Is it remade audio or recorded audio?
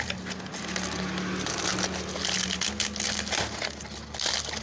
recorded